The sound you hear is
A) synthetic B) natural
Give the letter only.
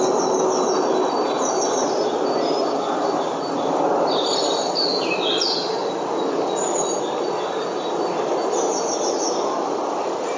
B